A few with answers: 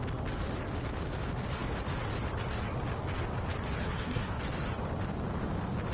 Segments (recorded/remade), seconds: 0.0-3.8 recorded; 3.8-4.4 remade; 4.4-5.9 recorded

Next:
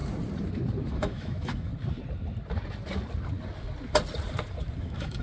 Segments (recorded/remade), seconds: 0.0-0.9 recorded; 0.9-1.7 remade; 1.7-4.8 recorded; 4.8-5.2 remade

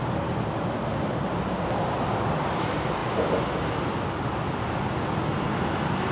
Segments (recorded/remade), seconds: 0.0-6.1 recorded

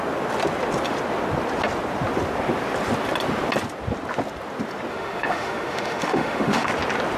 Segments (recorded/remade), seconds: 0.0-4.9 recorded; 4.9-6.7 remade; 6.7-7.2 recorded

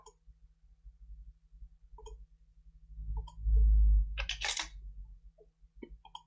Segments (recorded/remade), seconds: 0.0-6.3 recorded

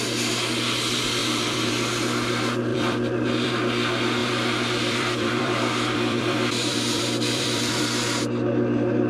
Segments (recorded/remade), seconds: 0.0-1.2 recorded; 1.2-1.7 remade; 1.7-2.7 recorded; 2.7-3.5 remade; 3.5-4.2 recorded; 4.2-7.8 remade; 7.8-9.1 recorded

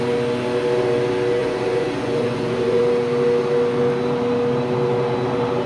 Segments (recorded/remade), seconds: 0.0-1.4 recorded; 1.4-2.8 remade; 2.8-5.7 recorded

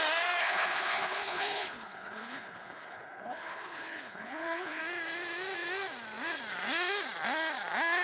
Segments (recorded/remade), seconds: 0.0-0.4 recorded; 0.4-4.8 remade; 4.8-8.0 recorded